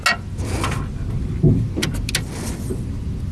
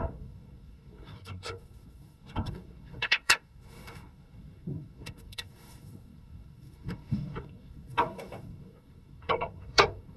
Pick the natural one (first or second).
first